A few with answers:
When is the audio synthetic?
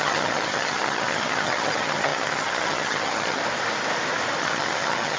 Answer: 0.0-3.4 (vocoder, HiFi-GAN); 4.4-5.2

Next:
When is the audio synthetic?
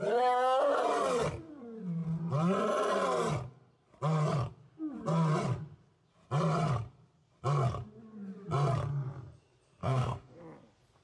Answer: 9.8-10.4 (codec, DAC)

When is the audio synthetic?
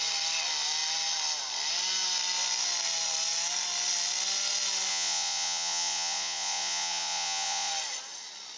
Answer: 4.9-7.7 (vocoder, Vocos)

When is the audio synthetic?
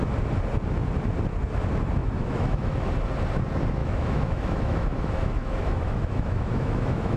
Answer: 2.0-2.9 (autoencoder, DAC-VAE); 3.8-7.2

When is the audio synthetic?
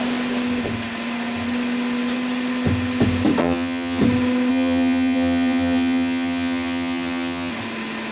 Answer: 3.4-4.0 (vocoder, HiFi-GAN); 4.5-7.5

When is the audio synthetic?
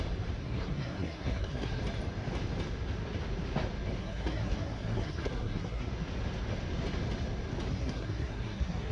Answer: 0.4-1.8 (codec, SNAC); 4.0-5.9; 7.7-8.9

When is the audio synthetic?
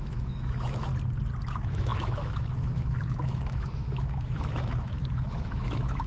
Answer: 0.0-0.9 (autoencoder, DAC-VAE); 1.5-6.1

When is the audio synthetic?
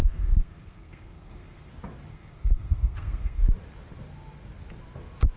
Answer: 0.0-1.7 (codec, SNAC); 2.1-3.4